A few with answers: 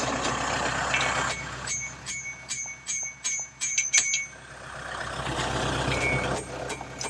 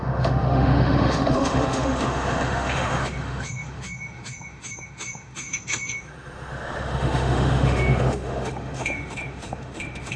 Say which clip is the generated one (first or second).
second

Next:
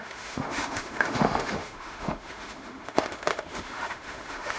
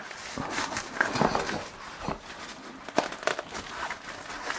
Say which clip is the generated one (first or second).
first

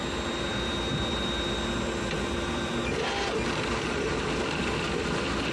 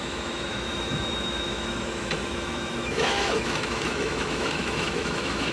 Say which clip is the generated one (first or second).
second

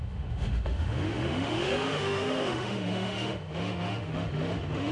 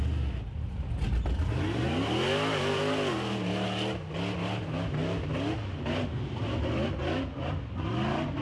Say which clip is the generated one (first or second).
first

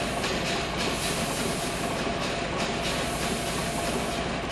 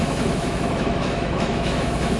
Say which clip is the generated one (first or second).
second